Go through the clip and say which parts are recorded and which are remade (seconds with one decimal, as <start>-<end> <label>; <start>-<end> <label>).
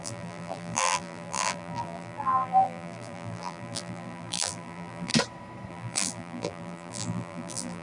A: 0.0-5.1 remade; 5.1-5.7 recorded; 5.7-7.8 remade